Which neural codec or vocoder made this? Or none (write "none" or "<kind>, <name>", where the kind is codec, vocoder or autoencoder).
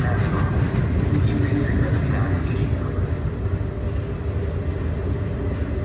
none